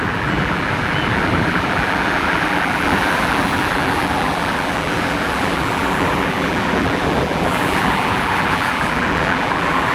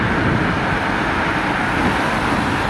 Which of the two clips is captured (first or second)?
second